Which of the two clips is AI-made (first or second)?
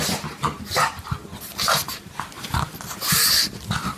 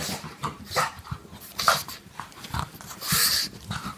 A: second